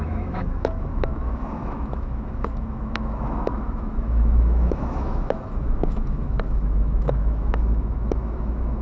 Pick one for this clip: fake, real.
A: fake